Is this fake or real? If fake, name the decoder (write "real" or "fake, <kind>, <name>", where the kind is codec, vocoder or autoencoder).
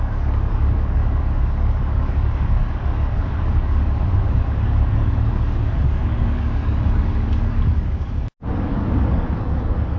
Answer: fake, codec, DAC